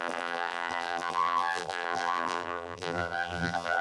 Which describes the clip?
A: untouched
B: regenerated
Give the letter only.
B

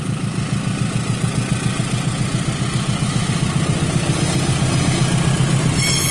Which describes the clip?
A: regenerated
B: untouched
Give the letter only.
B